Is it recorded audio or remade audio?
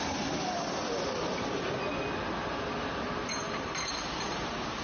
recorded